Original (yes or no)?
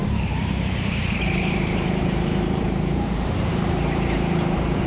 no